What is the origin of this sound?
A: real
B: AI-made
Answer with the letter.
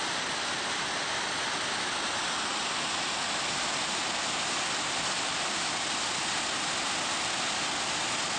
A